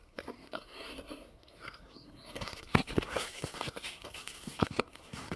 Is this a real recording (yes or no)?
no